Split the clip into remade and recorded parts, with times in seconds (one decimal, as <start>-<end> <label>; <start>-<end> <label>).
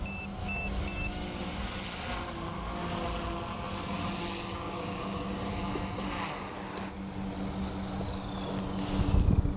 0.0-0.4 recorded; 0.4-1.2 remade; 1.2-4.5 recorded; 4.5-5.5 remade; 5.5-9.6 recorded